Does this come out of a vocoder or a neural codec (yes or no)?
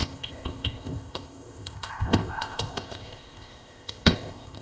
yes